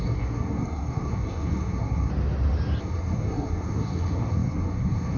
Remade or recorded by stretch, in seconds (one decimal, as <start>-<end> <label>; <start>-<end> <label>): 0.0-2.1 remade; 2.1-2.8 recorded; 2.8-5.2 remade